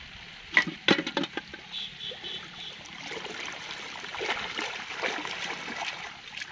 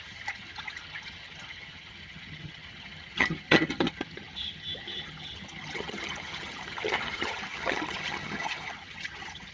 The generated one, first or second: second